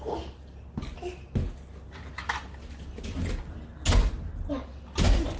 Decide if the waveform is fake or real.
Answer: real